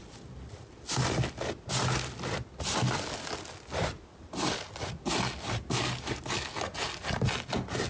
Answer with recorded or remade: recorded